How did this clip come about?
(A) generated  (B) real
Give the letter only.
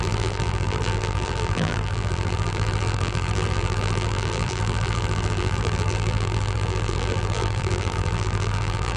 A